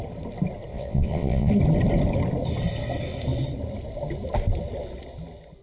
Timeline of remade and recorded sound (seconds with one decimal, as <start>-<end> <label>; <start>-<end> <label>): 0.0-0.7 recorded; 0.7-1.5 remade; 1.5-5.6 recorded